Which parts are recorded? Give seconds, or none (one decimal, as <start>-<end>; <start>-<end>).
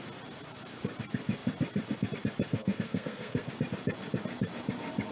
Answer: 0.0-2.5; 3.5-5.1